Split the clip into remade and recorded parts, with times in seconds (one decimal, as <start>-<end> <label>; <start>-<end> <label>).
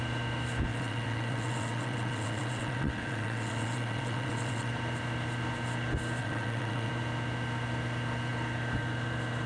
0.0-0.7 recorded; 0.7-4.7 remade; 4.7-6.2 recorded; 6.2-6.9 remade; 6.9-9.5 recorded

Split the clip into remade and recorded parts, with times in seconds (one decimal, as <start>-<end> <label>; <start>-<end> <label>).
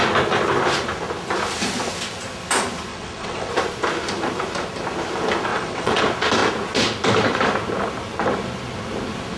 0.0-2.9 recorded; 2.9-3.5 remade; 3.5-5.5 recorded; 5.5-6.0 remade; 6.0-9.4 recorded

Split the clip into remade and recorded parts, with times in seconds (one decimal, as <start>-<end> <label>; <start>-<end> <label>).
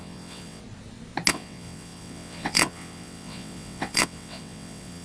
0.0-0.6 remade; 0.6-1.3 recorded; 1.3-5.0 remade